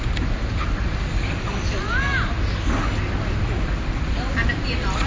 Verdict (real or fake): real